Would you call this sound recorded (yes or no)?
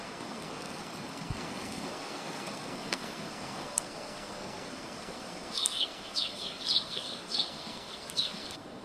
no